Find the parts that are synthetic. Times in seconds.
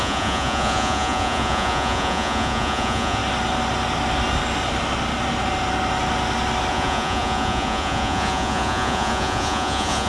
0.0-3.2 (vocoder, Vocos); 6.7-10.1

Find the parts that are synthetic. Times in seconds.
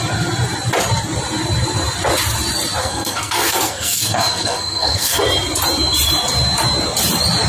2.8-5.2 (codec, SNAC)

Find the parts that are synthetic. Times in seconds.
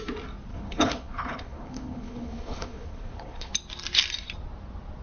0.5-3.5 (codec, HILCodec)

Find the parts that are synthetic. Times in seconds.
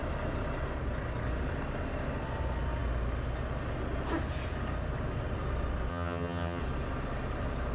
5.9-6.6 (vocoder, HiFi-GAN)